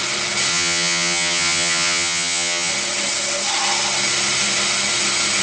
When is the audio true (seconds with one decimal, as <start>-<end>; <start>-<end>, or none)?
0.0-0.5; 2.7-5.4